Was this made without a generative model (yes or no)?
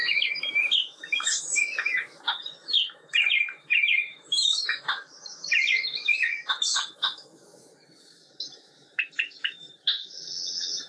no